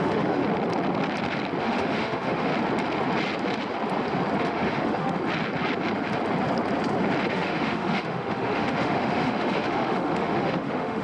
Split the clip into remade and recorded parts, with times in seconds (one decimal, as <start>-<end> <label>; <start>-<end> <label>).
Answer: 0.0-0.4 remade; 0.4-1.6 recorded; 1.6-2.5 remade; 2.5-4.4 recorded; 4.4-5.2 remade; 5.2-7.3 recorded; 7.3-11.0 remade